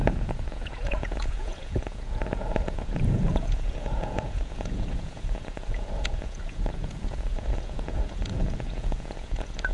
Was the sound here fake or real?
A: fake